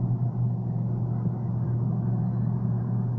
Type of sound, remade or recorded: recorded